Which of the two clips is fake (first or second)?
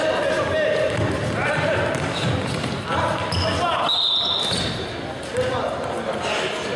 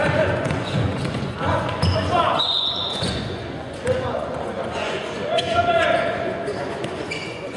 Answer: second